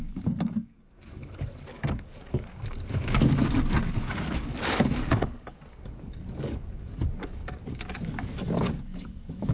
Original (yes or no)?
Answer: no